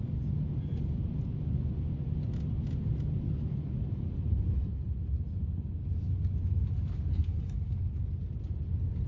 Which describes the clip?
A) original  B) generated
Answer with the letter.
A